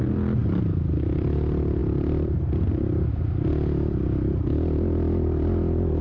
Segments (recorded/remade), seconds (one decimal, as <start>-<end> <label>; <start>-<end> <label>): 0.0-6.0 recorded